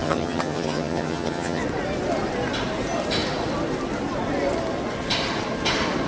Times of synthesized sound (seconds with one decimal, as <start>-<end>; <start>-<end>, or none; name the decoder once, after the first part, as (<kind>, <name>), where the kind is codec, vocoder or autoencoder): 0.0-1.6 (vocoder, HiFi-GAN)